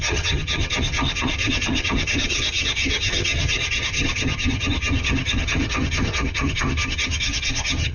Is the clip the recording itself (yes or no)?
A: no